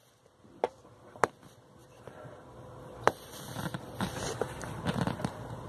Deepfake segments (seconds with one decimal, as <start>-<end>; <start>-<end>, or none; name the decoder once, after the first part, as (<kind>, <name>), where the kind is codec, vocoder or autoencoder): none